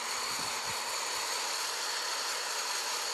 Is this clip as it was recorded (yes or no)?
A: yes